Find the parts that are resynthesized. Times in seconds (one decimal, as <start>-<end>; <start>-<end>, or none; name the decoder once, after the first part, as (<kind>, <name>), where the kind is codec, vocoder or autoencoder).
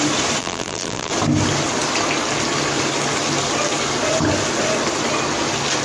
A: 0.4-1.1 (vocoder, BigVGAN v2)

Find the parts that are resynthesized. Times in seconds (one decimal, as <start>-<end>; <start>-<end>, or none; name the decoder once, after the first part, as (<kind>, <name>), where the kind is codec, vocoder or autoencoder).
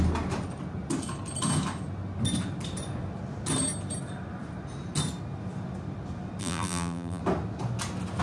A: 6.4-7.2 (vocoder, BigVGAN v2)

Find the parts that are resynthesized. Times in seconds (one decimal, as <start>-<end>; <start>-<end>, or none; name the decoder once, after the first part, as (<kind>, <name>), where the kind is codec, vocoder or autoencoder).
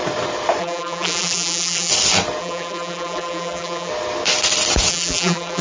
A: 0.6-1.9 (vocoder, BigVGAN v2); 2.4-3.9; 4.9-5.6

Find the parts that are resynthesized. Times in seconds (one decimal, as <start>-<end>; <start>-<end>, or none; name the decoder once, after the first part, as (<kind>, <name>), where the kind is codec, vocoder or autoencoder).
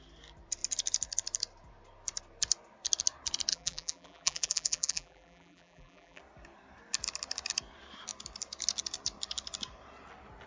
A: 3.5-6.2 (vocoder, BigVGAN v2)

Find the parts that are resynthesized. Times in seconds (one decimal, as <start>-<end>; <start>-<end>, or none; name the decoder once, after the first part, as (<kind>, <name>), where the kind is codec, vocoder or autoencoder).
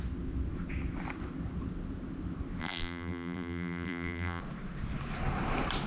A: 2.6-4.4 (vocoder, BigVGAN v2)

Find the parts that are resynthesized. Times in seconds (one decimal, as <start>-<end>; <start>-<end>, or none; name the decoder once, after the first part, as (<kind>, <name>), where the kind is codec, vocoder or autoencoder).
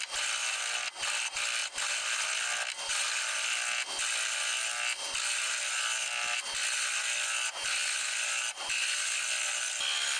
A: none